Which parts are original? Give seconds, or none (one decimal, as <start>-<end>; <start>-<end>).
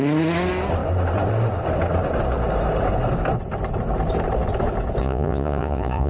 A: 0.0-5.0